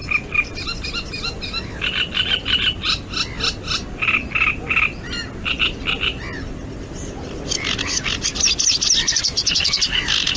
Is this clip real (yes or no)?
yes